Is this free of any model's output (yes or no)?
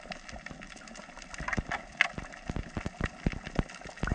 yes